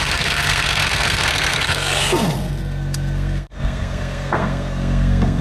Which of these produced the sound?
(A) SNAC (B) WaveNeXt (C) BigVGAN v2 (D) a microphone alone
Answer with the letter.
A